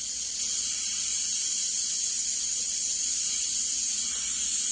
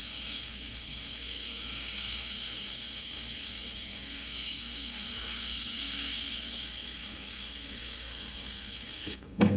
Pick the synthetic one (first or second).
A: second